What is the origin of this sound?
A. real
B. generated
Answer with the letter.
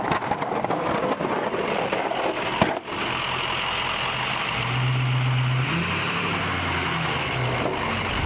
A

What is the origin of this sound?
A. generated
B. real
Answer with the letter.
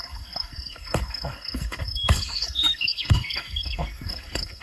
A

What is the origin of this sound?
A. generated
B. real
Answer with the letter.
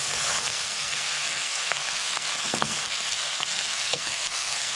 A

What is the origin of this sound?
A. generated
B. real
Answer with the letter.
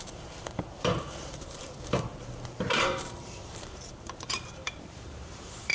A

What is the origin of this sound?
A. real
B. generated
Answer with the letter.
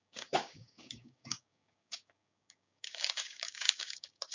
B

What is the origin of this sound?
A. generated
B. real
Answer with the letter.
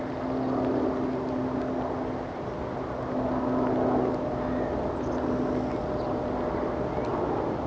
B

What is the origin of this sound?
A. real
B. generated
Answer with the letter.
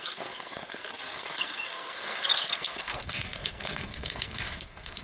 B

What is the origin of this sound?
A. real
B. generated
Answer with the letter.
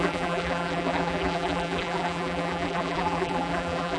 B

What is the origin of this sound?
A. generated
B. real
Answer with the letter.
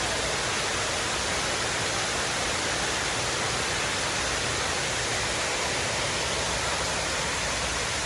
B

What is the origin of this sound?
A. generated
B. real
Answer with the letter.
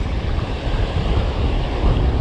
B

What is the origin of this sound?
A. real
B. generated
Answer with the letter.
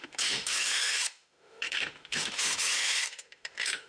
B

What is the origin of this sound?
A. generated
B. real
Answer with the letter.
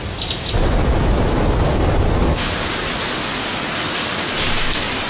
B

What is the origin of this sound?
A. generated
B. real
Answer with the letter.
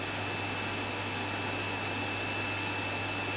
B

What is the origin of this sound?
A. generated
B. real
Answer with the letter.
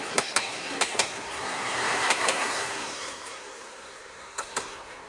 A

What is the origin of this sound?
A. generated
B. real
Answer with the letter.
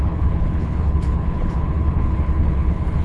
A